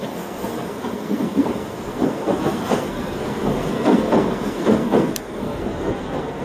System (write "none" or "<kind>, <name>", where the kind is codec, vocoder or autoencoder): codec, SNAC